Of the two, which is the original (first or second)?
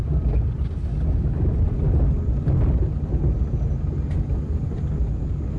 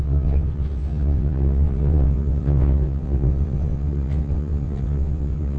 first